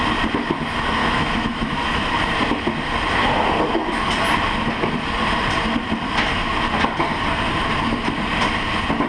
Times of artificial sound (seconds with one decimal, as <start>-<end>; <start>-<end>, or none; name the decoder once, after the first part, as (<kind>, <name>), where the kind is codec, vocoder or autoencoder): 1.0-2.1 (autoencoder, DAC-VAE)